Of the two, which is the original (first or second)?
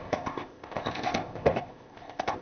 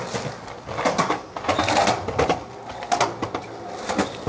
second